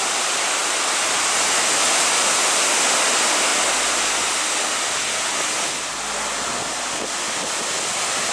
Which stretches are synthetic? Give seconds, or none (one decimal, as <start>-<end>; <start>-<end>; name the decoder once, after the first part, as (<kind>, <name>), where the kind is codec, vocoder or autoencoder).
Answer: none